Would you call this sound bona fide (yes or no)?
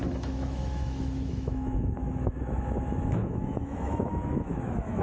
no